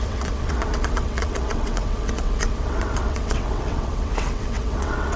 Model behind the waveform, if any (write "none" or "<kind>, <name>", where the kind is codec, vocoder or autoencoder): vocoder, WaveNeXt